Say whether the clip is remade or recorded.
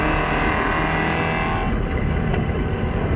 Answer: recorded